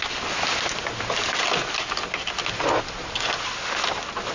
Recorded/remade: recorded